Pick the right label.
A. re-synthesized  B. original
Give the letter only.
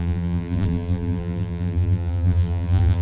A